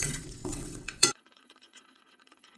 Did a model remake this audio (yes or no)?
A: yes